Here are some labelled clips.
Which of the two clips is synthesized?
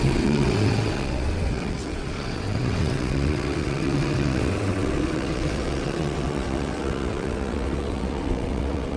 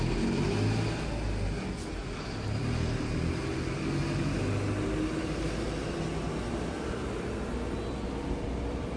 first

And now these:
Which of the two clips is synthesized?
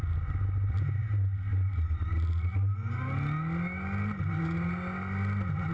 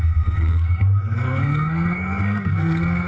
second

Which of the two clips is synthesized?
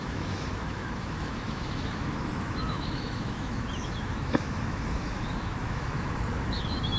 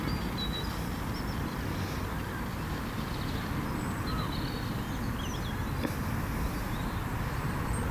first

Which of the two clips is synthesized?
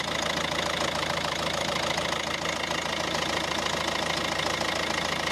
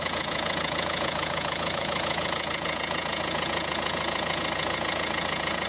second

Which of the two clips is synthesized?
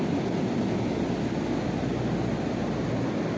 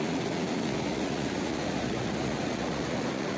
second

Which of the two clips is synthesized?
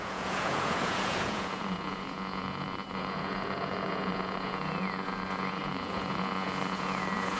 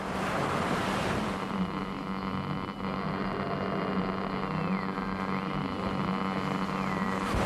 first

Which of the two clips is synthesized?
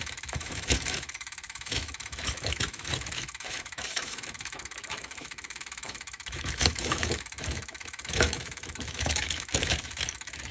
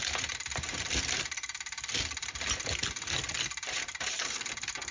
first